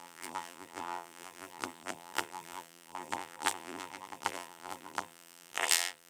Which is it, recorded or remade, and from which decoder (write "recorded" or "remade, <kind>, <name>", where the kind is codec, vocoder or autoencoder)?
remade, vocoder, BigVGAN v2